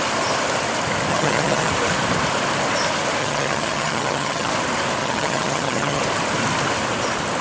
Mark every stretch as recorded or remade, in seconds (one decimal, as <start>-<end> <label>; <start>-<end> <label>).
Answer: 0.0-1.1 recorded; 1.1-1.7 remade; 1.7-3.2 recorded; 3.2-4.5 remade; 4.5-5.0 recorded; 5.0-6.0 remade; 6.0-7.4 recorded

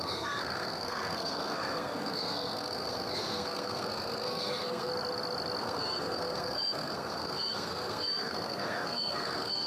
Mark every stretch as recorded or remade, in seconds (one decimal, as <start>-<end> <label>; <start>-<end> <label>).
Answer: 0.0-4.9 remade; 4.9-5.6 recorded; 5.6-9.7 remade

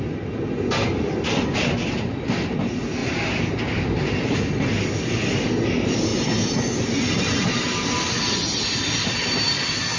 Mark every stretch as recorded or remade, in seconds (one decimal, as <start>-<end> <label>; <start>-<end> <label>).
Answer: 0.0-10.0 recorded

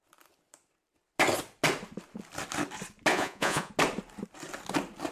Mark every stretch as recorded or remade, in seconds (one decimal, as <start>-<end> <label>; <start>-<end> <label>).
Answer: 0.0-3.1 recorded; 3.1-3.7 remade; 3.7-5.1 recorded

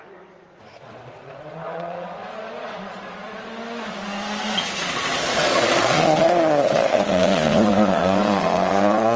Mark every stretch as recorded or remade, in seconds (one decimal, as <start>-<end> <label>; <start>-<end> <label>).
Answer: 0.0-3.5 remade; 3.5-4.4 recorded; 4.4-9.2 remade

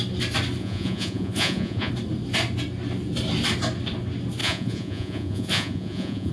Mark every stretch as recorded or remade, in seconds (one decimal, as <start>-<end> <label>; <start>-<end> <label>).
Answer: 0.0-0.6 recorded; 0.6-1.9 remade; 1.9-4.4 recorded; 4.4-6.3 remade